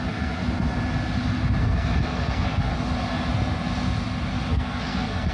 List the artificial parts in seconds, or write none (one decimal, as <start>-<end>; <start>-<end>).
0.0-0.4; 1.6-2.7; 4.5-5.3